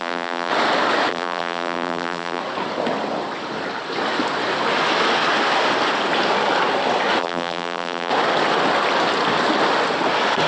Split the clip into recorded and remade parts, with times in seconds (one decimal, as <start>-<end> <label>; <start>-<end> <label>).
0.0-0.5 remade; 0.5-1.1 recorded; 1.1-2.4 remade; 2.4-7.2 recorded; 7.2-8.1 remade; 8.1-10.5 recorded